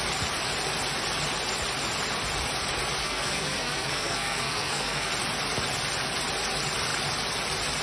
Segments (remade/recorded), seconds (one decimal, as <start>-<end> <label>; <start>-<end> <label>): 0.0-3.0 recorded; 3.0-5.1 remade; 5.1-7.8 recorded